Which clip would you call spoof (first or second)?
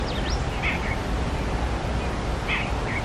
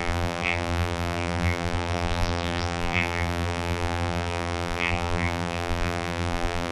second